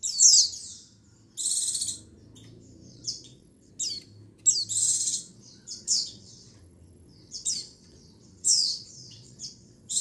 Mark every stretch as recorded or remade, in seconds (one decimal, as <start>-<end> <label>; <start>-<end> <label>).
0.0-2.9 recorded; 2.9-3.7 remade; 3.7-4.8 recorded; 4.8-10.0 remade